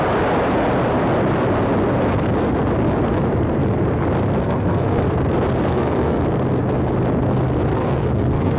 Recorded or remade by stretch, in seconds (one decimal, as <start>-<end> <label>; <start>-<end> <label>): 0.0-4.4 recorded; 4.4-5.0 remade; 5.0-5.7 recorded; 5.7-6.2 remade; 6.2-7.7 recorded; 7.7-8.6 remade